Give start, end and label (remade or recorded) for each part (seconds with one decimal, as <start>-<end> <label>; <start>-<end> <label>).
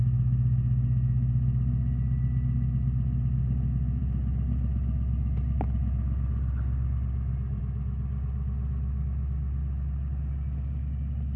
0.0-11.4 recorded